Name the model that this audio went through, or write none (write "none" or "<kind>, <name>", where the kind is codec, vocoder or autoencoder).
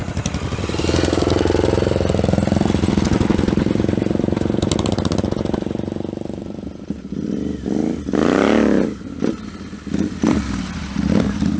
none